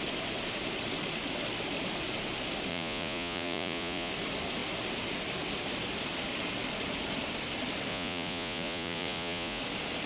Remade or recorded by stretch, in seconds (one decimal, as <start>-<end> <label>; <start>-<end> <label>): 0.0-2.7 recorded; 2.7-4.1 remade; 4.1-7.9 recorded; 7.9-9.6 remade; 9.6-10.1 recorded